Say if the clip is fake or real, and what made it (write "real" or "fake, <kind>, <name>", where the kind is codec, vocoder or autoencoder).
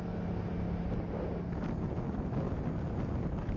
real